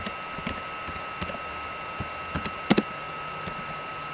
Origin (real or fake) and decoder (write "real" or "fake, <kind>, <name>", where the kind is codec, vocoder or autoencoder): real